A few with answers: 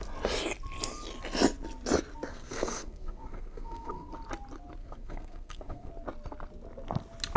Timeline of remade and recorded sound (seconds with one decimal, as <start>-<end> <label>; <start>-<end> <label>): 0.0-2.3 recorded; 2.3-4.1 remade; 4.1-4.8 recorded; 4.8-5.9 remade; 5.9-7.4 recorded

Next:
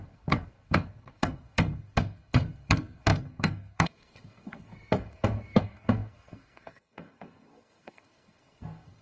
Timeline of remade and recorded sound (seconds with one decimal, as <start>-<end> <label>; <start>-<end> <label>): 0.0-9.0 remade

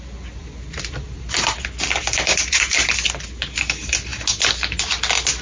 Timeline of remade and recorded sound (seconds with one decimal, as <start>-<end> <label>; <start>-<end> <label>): 0.0-0.4 recorded; 0.4-2.9 remade; 2.9-5.4 recorded

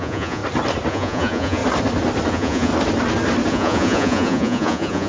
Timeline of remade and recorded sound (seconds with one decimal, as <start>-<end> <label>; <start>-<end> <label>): 0.0-0.4 remade; 0.4-0.9 recorded; 0.9-1.6 remade; 1.6-2.3 recorded; 2.3-2.7 remade; 2.7-3.5 recorded; 3.5-5.1 remade

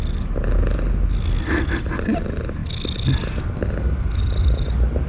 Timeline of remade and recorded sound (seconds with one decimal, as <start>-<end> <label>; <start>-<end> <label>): 0.0-5.1 recorded